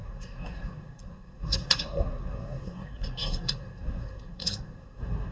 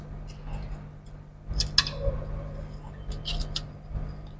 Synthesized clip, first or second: first